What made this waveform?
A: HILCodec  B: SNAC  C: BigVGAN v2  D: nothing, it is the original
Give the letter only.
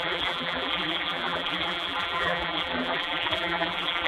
C